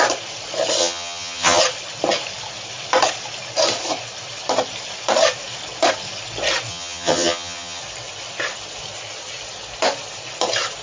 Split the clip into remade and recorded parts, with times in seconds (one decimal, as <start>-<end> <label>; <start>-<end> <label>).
0.0-0.8 recorded; 0.8-1.6 remade; 1.6-6.7 recorded; 6.7-7.8 remade; 7.8-10.8 recorded